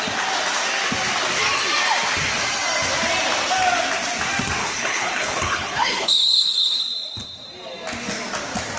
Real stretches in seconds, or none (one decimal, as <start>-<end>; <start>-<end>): 0.0-4.6; 6.8-8.8